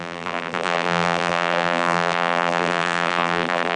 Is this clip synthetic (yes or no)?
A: yes